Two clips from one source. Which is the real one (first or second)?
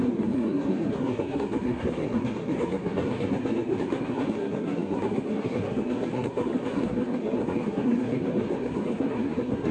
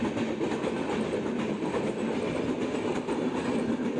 second